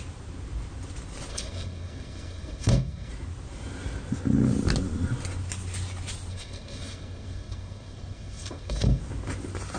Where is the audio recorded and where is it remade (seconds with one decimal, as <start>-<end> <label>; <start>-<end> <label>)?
0.0-1.3 recorded; 1.3-3.1 remade; 3.1-6.3 recorded; 6.3-9.0 remade; 9.0-9.8 recorded